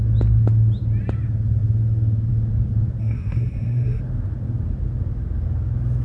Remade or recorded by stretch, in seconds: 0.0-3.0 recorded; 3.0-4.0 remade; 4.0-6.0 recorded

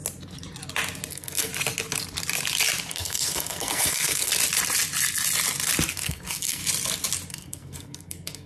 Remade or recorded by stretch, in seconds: 0.0-1.1 recorded; 1.1-1.5 remade; 1.5-2.9 recorded; 2.9-4.3 remade; 4.3-5.9 recorded; 5.9-6.6 remade; 6.6-7.3 recorded; 7.3-8.5 remade

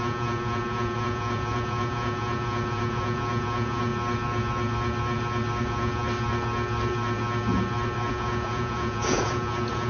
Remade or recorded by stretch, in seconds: 0.0-3.9 remade; 3.9-5.6 recorded; 5.6-6.0 remade; 6.0-8.1 recorded; 8.1-9.9 remade

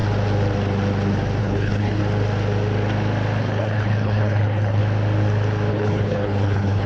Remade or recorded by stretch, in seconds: 0.0-1.4 recorded; 1.4-2.0 remade; 2.0-3.4 recorded; 3.4-4.8 remade; 4.8-5.7 recorded; 5.7-6.9 remade

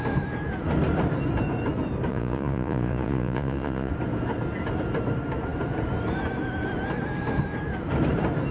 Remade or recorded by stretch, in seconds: 0.0-2.1 recorded; 2.1-3.9 remade; 3.9-8.5 recorded

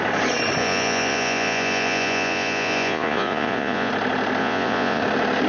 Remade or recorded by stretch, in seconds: 0.0-0.6 recorded; 0.6-3.9 remade; 3.9-4.4 recorded; 4.4-5.0 remade; 5.0-5.5 recorded